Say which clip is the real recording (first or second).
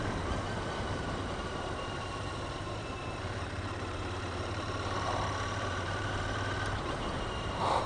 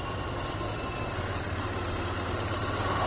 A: second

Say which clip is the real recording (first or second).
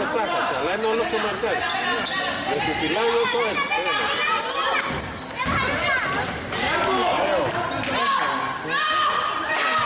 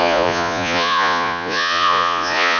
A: first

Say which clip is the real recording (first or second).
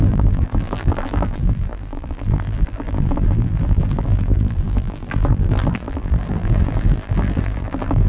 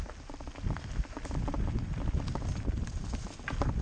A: second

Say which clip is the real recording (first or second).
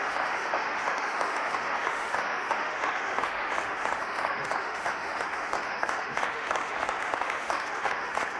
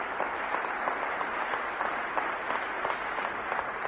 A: second